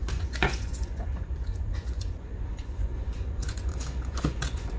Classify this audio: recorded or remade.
remade